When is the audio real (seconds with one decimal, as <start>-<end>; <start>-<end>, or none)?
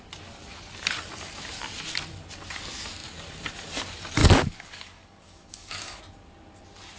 0.0-4.2; 6.0-7.0